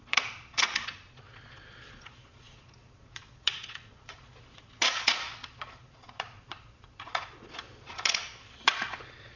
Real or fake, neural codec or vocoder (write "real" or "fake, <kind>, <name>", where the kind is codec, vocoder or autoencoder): fake, vocoder, Vocos